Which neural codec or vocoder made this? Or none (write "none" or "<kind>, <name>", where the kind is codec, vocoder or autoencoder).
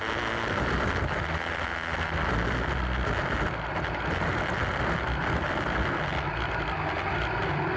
none